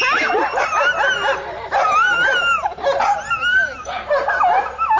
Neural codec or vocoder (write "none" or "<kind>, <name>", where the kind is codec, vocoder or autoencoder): none